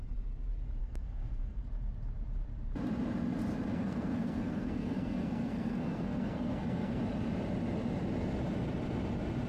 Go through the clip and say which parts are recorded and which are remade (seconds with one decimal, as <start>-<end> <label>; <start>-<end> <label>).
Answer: 0.0-0.8 recorded; 0.8-1.6 remade; 1.6-3.7 recorded; 3.7-7.0 remade; 7.0-9.5 recorded